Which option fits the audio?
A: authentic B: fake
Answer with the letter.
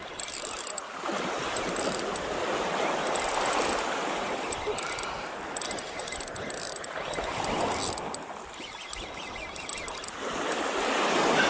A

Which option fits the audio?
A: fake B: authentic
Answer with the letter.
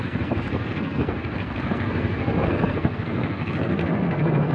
A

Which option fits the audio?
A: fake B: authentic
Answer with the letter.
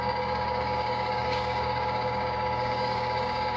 A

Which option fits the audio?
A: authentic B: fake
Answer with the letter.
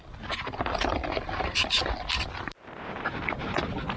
A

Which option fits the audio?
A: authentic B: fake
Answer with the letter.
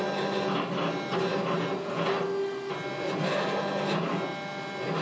A